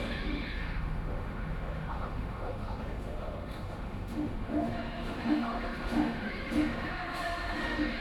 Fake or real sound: fake